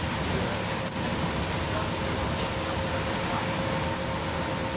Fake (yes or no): no